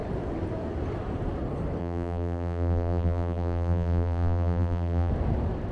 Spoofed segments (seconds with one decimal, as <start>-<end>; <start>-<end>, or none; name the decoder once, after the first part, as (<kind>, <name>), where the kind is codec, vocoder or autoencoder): 1.8-5.1 (vocoder, BigVGAN v2)